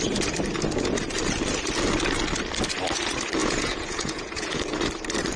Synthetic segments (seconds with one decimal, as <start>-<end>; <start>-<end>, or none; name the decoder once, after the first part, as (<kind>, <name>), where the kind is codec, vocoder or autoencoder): 3.4-4.6 (vocoder, Vocos)